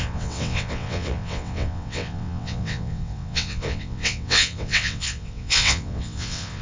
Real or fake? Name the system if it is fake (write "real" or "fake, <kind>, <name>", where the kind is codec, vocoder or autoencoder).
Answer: fake, vocoder, WaveNeXt